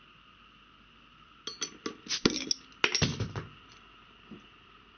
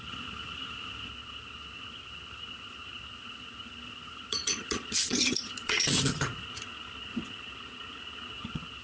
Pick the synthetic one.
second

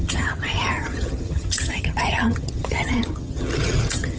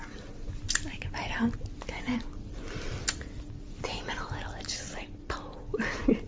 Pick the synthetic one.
first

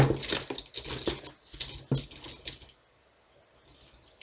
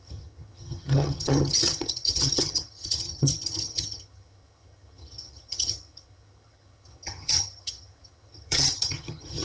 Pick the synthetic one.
second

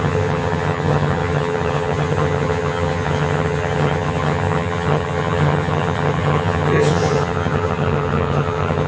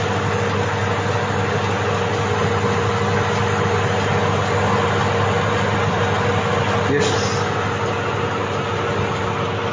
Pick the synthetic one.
first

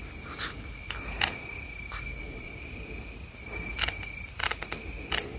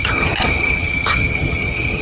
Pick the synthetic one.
second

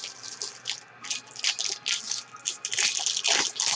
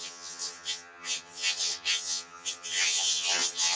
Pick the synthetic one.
second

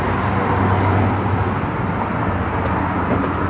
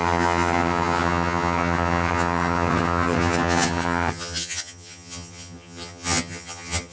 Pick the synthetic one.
second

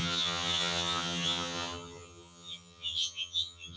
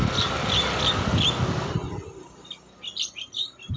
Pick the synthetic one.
first